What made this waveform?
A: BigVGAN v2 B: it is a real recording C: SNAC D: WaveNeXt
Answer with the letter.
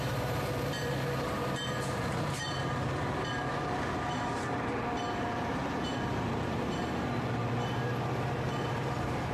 A